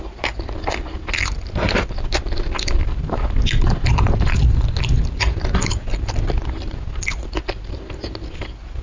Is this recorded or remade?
recorded